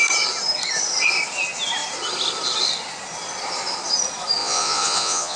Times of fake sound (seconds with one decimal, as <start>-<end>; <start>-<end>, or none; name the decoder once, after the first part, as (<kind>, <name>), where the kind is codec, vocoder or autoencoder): 4.4-5.4 (vocoder, Vocos)